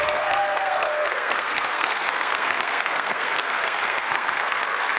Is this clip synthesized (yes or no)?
yes